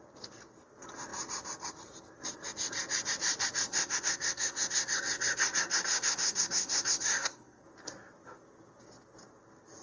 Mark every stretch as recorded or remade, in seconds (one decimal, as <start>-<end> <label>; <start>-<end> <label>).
0.0-3.7 recorded; 3.7-7.6 remade; 7.6-9.8 recorded